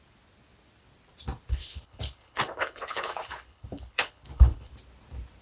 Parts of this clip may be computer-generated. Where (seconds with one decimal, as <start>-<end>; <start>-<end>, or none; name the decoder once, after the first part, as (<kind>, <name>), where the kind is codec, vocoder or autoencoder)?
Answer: 1.5-4.7 (codec, HILCodec)